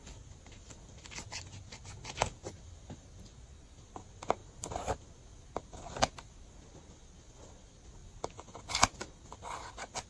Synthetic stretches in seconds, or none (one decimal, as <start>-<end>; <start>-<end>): none